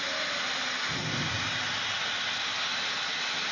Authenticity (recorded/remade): recorded